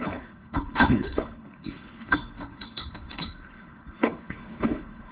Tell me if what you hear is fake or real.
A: fake